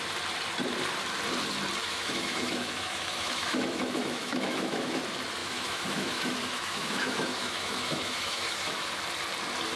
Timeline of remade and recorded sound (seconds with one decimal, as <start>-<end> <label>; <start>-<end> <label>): 0.0-1.8 recorded; 1.8-5.0 remade; 5.0-5.4 recorded; 5.4-8.9 remade; 8.9-9.8 recorded

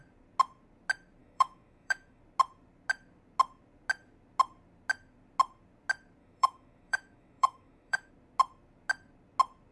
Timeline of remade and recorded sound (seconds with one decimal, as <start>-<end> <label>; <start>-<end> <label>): 0.0-1.2 recorded; 1.2-2.2 remade; 2.2-6.2 recorded; 6.2-8.1 remade; 8.1-9.7 recorded

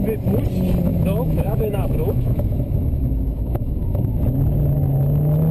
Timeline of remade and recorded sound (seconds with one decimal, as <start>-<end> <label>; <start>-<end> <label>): 0.0-0.9 recorded; 0.9-4.2 remade; 4.2-5.5 recorded

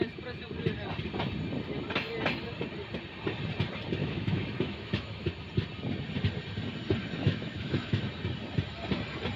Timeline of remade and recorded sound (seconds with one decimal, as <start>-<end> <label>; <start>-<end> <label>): 0.0-4.0 recorded; 4.0-5.3 remade; 5.3-7.2 recorded; 7.2-8.0 remade; 8.0-9.4 recorded

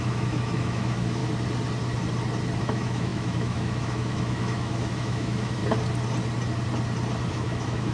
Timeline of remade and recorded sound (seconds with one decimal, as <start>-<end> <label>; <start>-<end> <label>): 0.0-1.2 remade; 1.2-2.6 recorded; 2.6-5.6 remade; 5.6-7.3 recorded; 7.3-7.9 remade

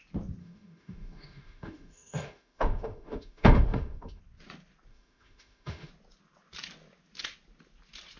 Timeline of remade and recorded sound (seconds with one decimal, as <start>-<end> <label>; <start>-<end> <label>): 0.0-0.4 recorded; 0.4-4.2 remade; 4.2-4.9 recorded; 4.9-5.9 remade; 5.9-8.2 recorded

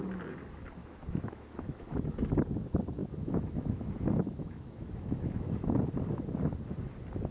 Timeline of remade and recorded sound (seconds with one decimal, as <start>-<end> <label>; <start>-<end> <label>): 0.0-0.8 recorded; 0.8-2.3 remade; 2.3-3.0 recorded; 3.0-5.8 remade; 5.8-7.3 recorded